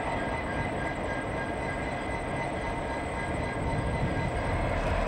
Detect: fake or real real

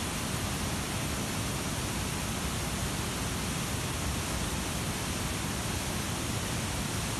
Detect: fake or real real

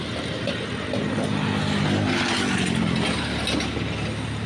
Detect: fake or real real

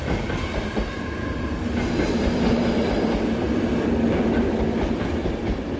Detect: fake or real real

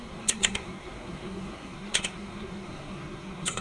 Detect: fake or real fake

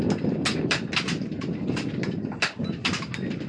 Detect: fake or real fake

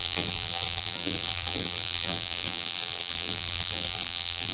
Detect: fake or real fake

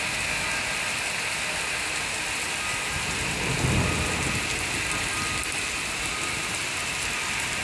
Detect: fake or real real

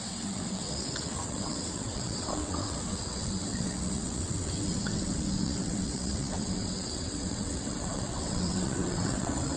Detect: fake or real fake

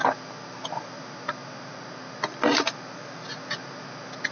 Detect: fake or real real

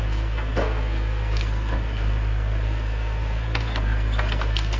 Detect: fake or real fake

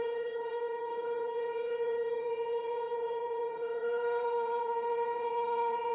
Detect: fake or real fake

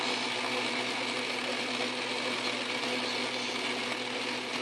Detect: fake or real real